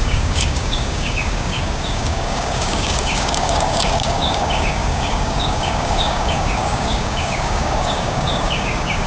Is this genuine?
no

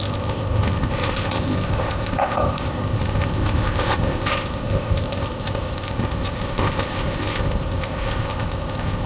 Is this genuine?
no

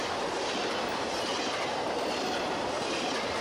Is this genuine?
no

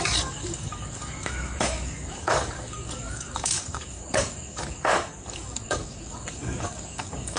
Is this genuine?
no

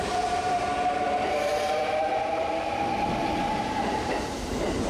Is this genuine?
no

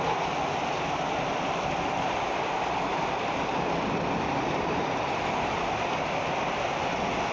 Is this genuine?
yes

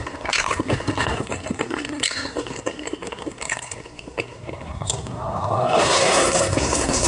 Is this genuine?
no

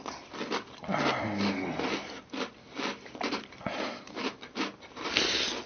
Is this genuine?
yes